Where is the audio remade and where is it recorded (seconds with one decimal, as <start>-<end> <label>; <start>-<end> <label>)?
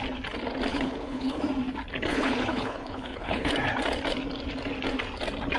0.0-0.7 recorded; 0.7-1.4 remade; 1.4-2.1 recorded; 2.1-3.5 remade; 3.5-5.6 recorded